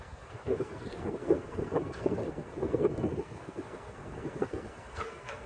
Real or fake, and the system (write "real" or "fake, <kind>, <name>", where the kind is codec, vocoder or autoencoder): fake, codec, SNAC